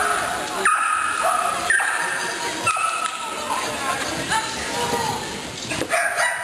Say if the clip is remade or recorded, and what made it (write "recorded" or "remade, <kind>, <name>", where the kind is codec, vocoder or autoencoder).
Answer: remade, vocoder, BigVGAN v2